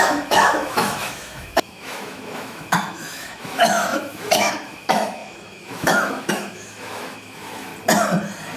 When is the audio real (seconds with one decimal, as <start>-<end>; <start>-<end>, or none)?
7.7-8.6